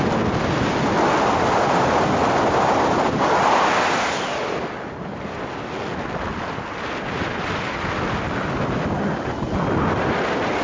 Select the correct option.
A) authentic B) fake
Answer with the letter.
A